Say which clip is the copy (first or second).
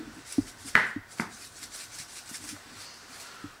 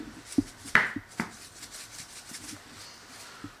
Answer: first